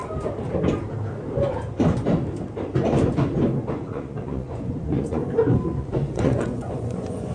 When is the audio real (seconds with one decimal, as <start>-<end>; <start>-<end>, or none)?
0.0-3.6; 5.2-5.8